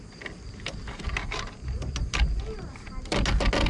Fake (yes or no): no